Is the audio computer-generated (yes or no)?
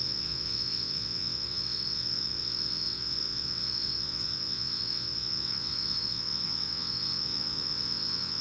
yes